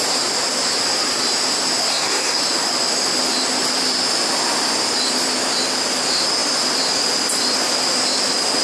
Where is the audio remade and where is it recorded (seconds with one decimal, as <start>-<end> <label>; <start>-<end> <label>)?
0.0-1.9 recorded; 1.9-2.4 remade; 2.4-8.6 recorded

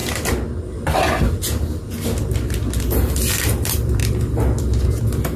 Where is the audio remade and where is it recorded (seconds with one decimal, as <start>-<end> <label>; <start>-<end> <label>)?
0.0-3.2 recorded; 3.2-5.4 remade

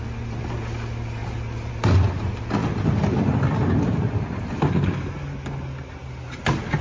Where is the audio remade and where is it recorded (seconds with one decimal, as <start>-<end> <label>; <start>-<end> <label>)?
0.0-6.8 recorded

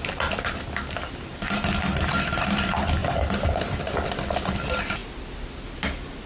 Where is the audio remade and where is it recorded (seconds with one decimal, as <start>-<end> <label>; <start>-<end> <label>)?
0.0-3.0 recorded; 3.0-3.9 remade; 3.9-6.3 recorded

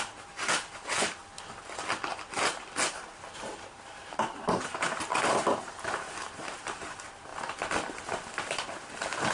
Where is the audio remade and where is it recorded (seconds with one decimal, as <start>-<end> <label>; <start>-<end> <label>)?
0.0-1.2 remade; 1.2-3.5 recorded; 3.5-7.3 remade; 7.3-8.5 recorded; 8.5-9.3 remade

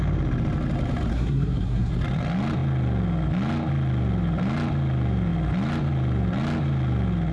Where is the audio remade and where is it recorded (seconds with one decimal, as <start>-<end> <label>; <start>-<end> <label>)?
0.0-1.1 recorded; 1.1-1.9 remade; 1.9-7.3 recorded

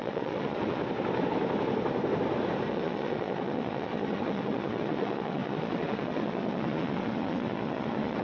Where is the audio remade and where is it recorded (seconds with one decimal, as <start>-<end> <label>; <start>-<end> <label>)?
0.0-0.8 remade; 0.8-2.7 recorded; 2.7-8.2 remade

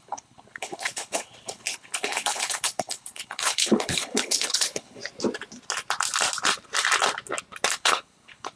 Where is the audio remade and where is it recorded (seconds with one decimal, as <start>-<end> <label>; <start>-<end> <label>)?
0.0-5.0 remade; 5.0-7.7 recorded; 7.7-8.6 remade